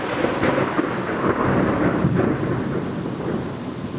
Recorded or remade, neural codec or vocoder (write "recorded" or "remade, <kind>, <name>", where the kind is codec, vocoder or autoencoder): recorded